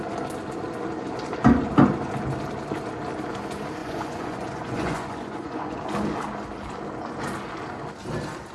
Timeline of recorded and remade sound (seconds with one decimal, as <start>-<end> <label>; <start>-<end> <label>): 0.0-3.8 recorded; 3.8-5.8 remade; 5.8-8.5 recorded